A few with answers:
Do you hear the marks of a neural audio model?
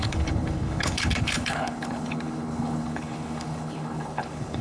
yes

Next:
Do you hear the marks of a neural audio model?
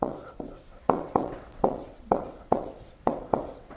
yes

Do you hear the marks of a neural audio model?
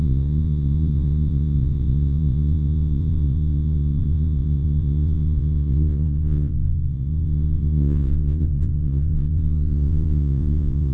yes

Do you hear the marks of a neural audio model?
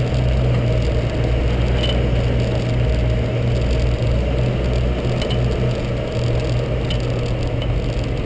no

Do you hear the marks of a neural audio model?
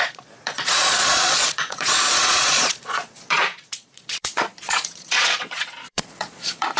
yes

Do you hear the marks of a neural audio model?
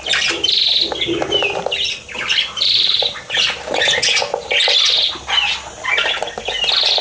no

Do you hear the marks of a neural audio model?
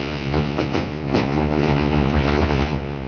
yes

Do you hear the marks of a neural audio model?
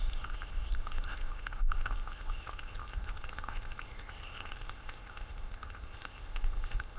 yes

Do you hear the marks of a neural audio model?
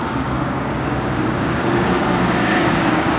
yes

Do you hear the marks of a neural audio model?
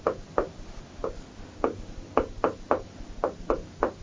no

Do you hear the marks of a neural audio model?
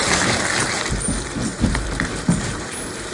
yes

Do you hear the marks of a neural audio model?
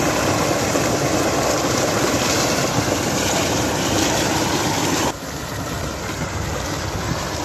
no